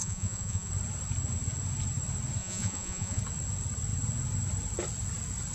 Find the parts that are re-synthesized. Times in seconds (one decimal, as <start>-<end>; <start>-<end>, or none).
0.0-0.7; 2.4-3.2